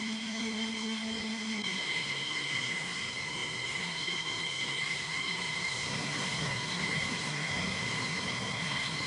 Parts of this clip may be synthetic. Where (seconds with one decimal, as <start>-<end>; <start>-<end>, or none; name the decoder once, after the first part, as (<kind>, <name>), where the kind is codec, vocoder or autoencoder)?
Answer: 0.0-9.1 (codec, SNAC)